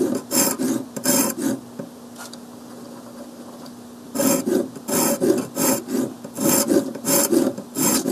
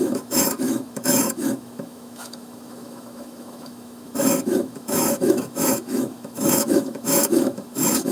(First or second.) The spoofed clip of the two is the second